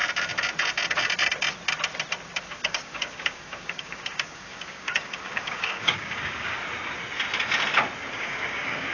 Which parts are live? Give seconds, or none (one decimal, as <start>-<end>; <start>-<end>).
0.0-2.4; 6.6-8.1